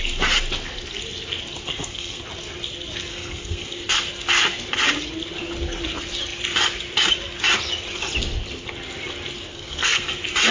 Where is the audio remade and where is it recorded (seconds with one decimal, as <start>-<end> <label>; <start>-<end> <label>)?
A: 0.0-1.6 recorded; 1.6-2.2 remade; 2.2-3.1 recorded; 3.1-4.1 remade; 4.1-9.5 recorded; 9.5-10.1 remade; 10.1-10.5 recorded